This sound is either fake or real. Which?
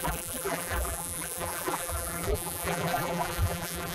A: fake